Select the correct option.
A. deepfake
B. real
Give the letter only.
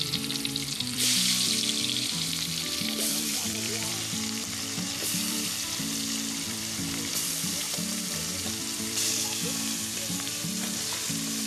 A